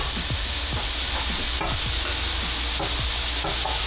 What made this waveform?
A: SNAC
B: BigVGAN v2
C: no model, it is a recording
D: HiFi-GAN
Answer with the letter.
C